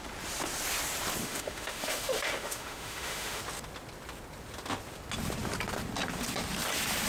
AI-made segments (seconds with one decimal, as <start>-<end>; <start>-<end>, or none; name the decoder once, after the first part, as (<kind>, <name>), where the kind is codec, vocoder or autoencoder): 1.2-3.4 (autoencoder, DAC-VAE)